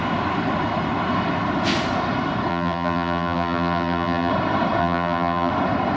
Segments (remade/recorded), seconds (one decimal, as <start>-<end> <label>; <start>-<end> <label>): 0.0-2.5 recorded; 2.5-4.3 remade; 4.3-4.8 recorded; 4.8-5.5 remade; 5.5-6.0 recorded